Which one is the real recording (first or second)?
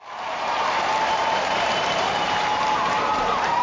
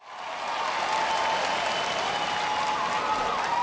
second